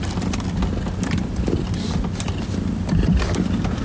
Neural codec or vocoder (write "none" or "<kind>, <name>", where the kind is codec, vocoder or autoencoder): none